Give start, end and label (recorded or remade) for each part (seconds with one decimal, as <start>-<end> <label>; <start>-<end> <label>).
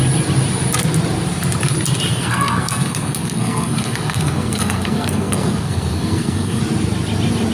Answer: 0.0-2.1 recorded; 2.1-6.6 remade; 6.6-7.5 recorded